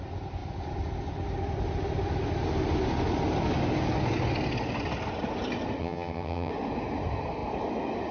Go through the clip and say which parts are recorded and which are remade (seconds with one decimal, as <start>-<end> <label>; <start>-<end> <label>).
0.0-5.8 recorded; 5.8-6.5 remade; 6.5-8.1 recorded